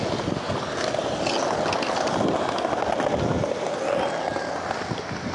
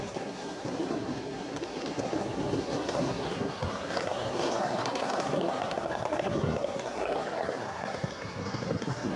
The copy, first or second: second